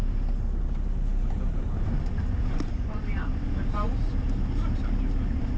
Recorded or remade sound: recorded